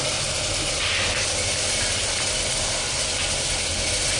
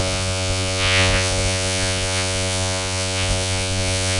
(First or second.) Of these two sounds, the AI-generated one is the second